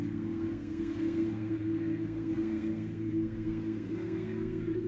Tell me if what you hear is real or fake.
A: fake